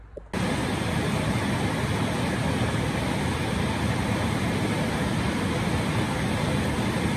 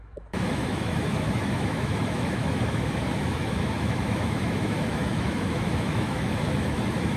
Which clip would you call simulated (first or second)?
second